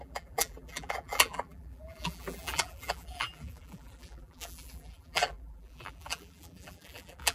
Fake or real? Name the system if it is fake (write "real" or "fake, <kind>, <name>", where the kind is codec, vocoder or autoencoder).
fake, vocoder, BigVGAN v2